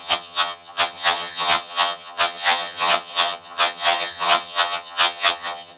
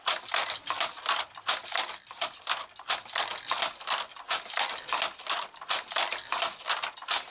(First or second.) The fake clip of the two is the first